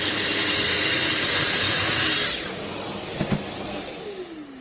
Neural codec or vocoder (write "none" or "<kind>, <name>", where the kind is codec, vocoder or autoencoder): none